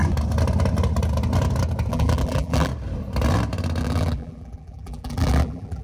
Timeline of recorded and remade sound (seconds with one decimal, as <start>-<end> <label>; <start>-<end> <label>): 0.0-1.9 recorded; 1.9-2.7 remade; 2.7-3.8 recorded; 3.8-5.8 remade